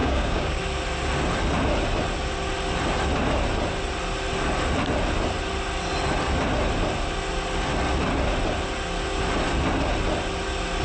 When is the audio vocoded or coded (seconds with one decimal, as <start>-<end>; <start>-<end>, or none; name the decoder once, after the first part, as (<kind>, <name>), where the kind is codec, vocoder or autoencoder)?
0.0-0.6 (codec, DAC)